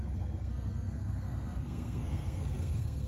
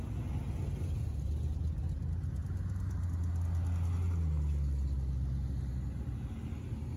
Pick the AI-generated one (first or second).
first